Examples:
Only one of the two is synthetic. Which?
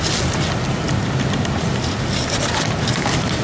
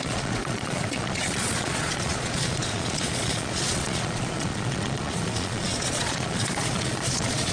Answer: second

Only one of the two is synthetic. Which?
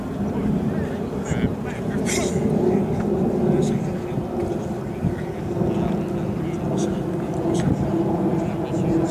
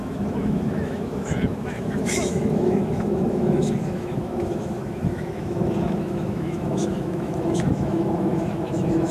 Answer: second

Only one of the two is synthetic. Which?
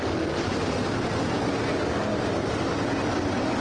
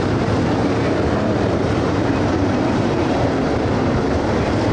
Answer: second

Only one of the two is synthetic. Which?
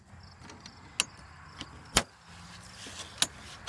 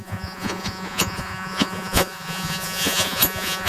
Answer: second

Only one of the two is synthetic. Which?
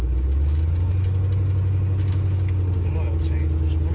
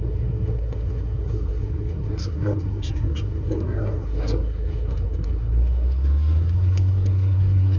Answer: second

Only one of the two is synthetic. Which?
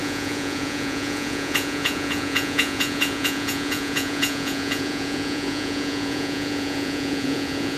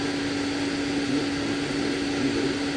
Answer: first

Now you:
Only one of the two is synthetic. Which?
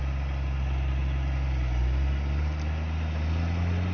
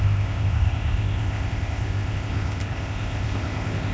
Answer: second